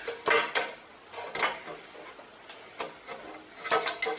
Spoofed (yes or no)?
no